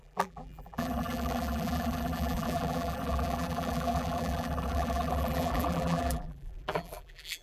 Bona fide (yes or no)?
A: no